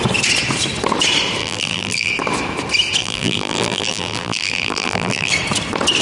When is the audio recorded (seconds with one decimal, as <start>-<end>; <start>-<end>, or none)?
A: 0.0-1.4; 2.1-3.0; 5.3-6.0